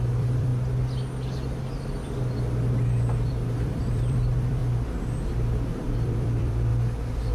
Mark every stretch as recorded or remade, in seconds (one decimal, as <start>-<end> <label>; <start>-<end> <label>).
0.0-0.5 remade; 0.5-3.3 recorded; 3.3-4.6 remade; 4.6-5.7 recorded; 5.7-6.7 remade; 6.7-7.3 recorded